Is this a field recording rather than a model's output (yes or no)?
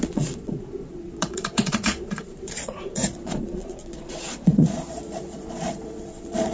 no